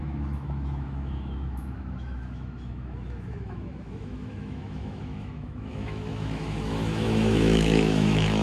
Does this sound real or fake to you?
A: fake